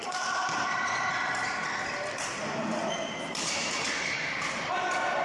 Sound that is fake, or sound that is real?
real